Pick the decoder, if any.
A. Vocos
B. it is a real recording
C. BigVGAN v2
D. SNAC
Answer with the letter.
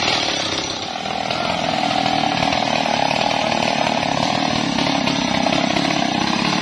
B